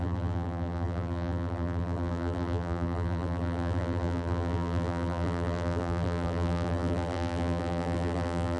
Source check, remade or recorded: remade